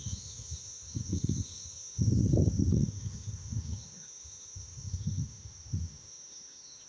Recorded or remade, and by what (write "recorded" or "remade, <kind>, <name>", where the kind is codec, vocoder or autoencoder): remade, autoencoder, DAC-VAE